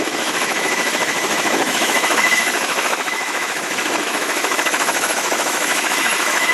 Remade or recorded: remade